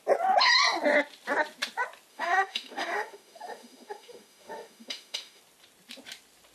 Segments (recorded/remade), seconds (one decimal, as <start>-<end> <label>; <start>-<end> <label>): 0.0-2.1 recorded; 2.1-5.4 remade; 5.4-6.5 recorded